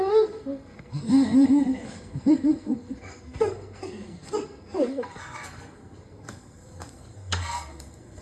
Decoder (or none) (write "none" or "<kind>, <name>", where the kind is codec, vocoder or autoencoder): codec, SNAC